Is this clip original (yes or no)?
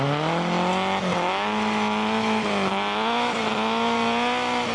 yes